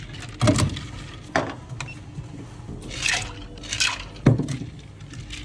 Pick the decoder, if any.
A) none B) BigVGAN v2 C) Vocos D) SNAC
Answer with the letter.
A